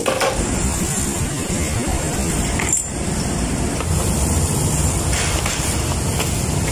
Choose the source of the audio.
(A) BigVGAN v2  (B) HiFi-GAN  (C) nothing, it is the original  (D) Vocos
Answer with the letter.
C